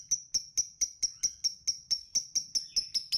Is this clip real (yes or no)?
yes